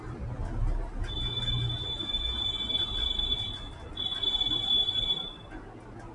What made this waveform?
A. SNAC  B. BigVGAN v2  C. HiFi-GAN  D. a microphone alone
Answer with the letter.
D